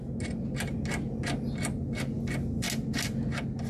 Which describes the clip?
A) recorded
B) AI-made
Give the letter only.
A